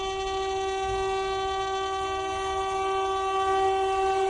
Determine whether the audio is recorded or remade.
recorded